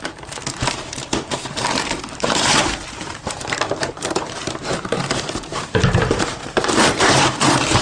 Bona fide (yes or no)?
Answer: no